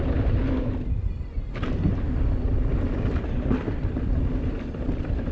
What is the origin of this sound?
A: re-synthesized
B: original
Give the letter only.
B